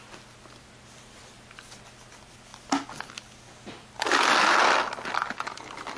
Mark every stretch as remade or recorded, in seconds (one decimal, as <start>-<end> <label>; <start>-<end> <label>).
0.0-6.0 recorded